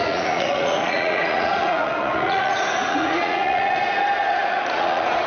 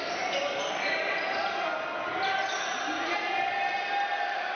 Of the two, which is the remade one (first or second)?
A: first